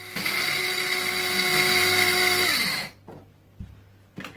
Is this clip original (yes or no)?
yes